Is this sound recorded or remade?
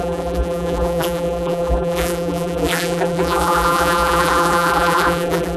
remade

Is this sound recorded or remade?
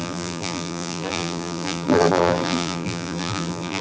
remade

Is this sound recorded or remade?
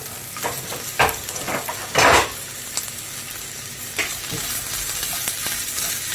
recorded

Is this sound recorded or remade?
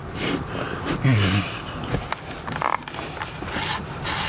recorded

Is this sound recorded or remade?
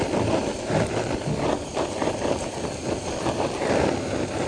remade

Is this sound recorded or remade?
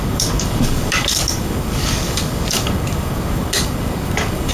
remade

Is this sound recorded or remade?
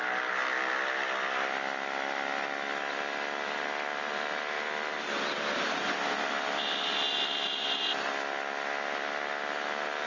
recorded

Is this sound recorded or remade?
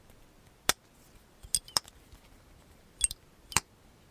recorded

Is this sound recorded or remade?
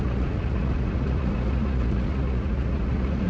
remade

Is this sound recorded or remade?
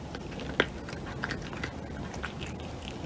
recorded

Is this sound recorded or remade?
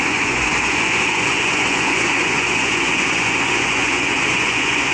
remade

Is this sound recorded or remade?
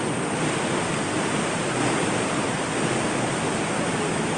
recorded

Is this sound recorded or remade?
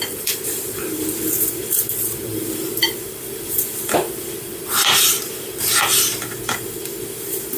remade